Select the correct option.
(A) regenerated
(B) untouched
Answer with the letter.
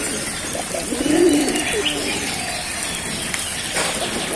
B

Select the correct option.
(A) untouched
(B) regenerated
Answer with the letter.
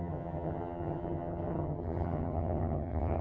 B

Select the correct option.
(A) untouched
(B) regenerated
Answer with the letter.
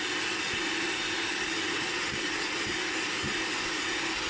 A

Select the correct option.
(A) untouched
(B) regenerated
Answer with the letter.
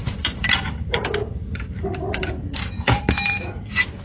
B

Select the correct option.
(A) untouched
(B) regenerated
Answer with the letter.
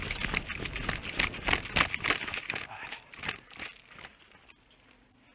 A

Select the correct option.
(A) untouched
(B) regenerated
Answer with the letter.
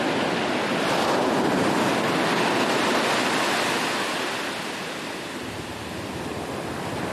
A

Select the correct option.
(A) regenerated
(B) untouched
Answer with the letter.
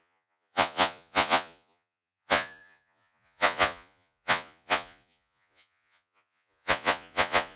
A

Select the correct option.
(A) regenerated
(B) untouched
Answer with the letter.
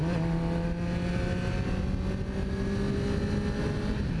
B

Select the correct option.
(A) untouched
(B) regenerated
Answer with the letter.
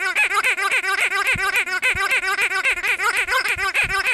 A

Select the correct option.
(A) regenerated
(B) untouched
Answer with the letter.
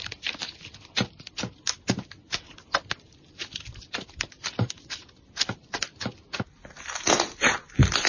B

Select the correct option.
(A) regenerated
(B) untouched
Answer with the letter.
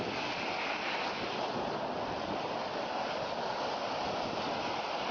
B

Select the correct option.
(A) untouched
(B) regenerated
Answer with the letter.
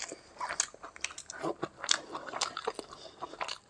A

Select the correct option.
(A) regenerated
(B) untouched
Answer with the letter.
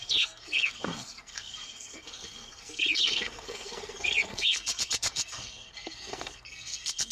A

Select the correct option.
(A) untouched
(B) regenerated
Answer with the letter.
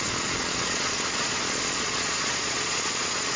B